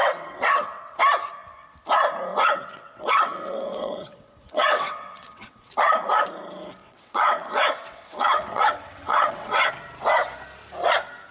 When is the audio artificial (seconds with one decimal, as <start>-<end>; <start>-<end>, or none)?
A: 0.0-1.0; 2.3-5.7; 6.8-9.7